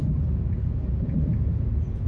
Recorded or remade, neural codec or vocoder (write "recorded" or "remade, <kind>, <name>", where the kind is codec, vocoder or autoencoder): remade, vocoder, Vocos